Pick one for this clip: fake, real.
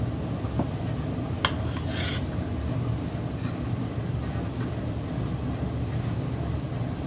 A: real